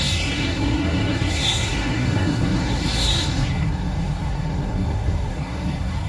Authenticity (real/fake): fake